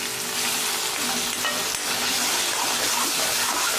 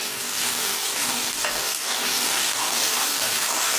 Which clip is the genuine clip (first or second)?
first